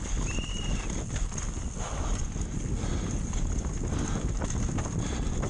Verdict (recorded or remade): recorded